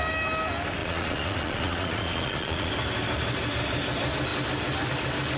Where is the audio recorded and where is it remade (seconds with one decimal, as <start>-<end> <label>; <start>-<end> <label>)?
0.0-0.8 recorded; 0.8-2.7 remade; 2.7-5.4 recorded

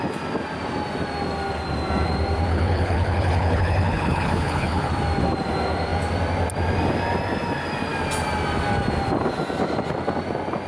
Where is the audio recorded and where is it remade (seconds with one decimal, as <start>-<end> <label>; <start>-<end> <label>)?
0.0-2.5 recorded; 2.5-4.9 remade; 4.9-10.7 recorded